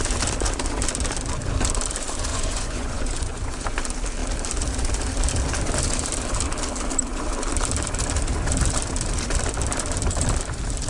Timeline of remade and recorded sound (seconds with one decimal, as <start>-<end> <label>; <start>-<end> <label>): 0.0-2.3 recorded; 2.3-3.8 remade; 3.8-10.9 recorded